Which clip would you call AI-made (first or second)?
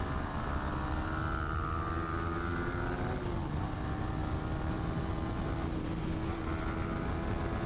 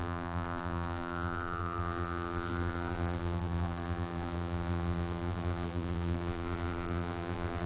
second